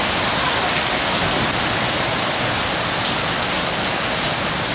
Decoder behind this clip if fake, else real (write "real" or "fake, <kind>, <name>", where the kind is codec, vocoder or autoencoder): real